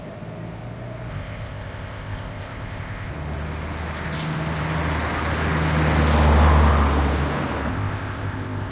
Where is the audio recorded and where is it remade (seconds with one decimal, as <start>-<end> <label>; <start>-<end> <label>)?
0.0-1.1 recorded; 1.1-3.1 remade; 3.1-7.7 recorded; 7.7-8.7 remade